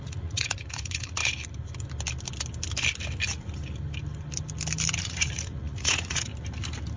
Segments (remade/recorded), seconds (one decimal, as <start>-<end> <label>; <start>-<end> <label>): 0.0-1.2 remade; 1.2-5.0 recorded; 5.0-6.3 remade; 6.3-7.0 recorded